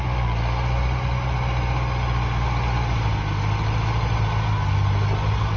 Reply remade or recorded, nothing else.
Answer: recorded